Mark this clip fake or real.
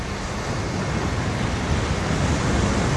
real